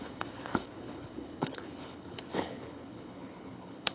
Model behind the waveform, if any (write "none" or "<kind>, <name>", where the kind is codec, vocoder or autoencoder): codec, HILCodec